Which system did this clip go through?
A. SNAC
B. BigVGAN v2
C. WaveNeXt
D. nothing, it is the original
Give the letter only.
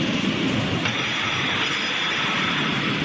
B